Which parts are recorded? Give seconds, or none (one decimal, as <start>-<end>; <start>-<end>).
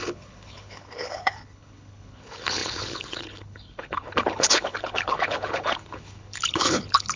none